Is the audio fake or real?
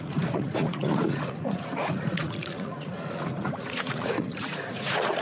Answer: fake